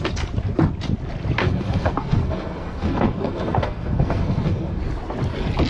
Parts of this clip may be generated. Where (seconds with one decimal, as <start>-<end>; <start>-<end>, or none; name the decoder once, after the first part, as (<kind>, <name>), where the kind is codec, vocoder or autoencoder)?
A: 1.4-4.8 (codec, SNAC)